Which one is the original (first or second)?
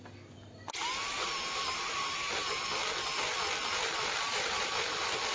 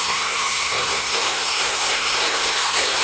first